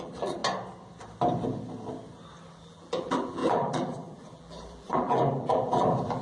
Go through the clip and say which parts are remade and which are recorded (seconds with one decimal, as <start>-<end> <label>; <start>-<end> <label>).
0.0-0.4 remade; 0.4-2.6 recorded; 2.6-6.2 remade